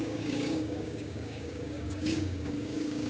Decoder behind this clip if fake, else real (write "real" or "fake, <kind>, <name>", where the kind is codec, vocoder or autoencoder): fake, codec, DAC